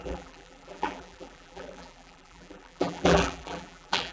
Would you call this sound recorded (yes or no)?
no